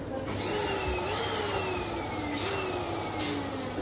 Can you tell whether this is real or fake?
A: real